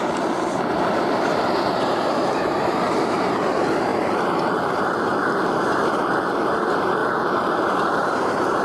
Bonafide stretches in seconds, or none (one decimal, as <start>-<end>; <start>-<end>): none